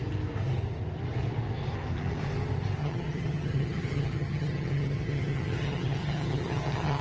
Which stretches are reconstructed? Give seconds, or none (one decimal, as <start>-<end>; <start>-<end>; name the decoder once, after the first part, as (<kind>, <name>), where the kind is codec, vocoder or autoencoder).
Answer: 2.8-7.0 (vocoder, HiFi-GAN)